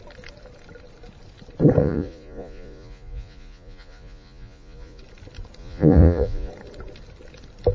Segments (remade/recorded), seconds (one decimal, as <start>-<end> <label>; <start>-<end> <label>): 0.0-1.8 recorded; 1.8-5.0 remade; 5.0-5.6 recorded; 5.6-6.5 remade; 6.5-7.7 recorded